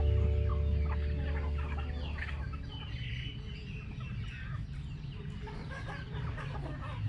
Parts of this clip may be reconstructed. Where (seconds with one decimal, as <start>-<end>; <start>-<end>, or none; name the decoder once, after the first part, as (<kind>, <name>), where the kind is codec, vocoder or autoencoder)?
none